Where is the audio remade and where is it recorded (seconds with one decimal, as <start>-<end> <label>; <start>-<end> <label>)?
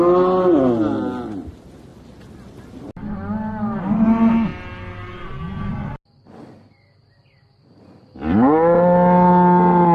0.0-9.9 recorded